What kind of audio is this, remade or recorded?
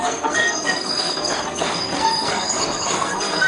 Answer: remade